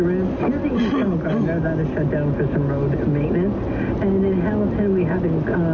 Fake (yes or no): no